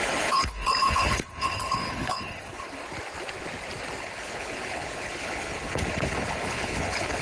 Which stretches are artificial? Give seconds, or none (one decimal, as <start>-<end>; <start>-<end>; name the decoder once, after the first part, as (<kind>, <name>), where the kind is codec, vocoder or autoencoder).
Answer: 0.0-2.8 (codec, HILCodec); 4.0-7.2